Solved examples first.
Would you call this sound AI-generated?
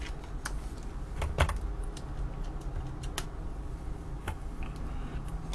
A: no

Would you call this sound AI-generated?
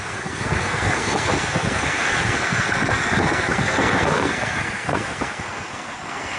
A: yes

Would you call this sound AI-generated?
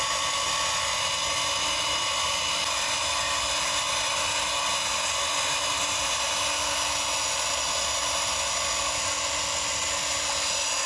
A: no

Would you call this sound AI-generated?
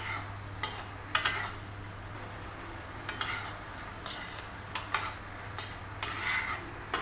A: no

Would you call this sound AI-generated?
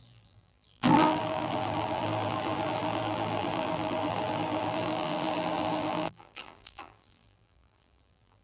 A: yes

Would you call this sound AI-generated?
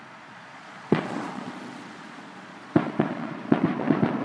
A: yes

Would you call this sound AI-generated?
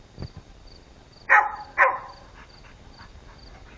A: no